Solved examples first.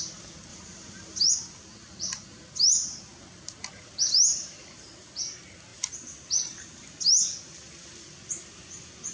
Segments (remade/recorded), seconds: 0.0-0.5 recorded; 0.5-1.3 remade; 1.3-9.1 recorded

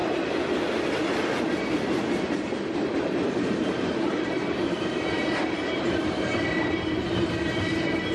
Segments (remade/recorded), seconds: 0.0-1.5 recorded; 1.5-8.1 remade

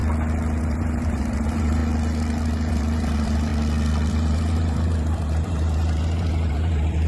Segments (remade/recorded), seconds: 0.0-0.6 recorded; 0.6-1.8 remade; 1.8-2.7 recorded; 2.7-3.5 remade; 3.5-4.1 recorded; 4.1-7.1 remade

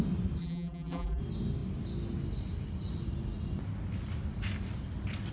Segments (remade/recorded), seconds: 0.0-0.4 recorded; 0.4-1.2 remade; 1.2-5.3 recorded

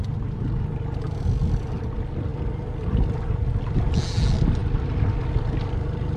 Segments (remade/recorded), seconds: 0.0-6.2 recorded

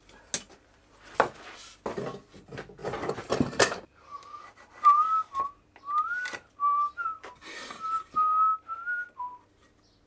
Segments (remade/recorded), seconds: 0.0-2.8 recorded; 2.8-3.9 remade; 3.9-10.1 recorded